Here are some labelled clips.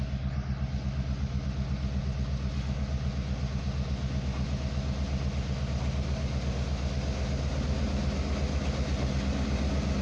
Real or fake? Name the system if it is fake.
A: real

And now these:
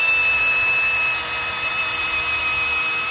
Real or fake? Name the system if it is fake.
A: real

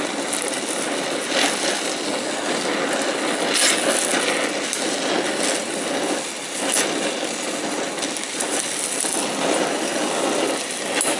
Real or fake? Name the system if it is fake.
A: real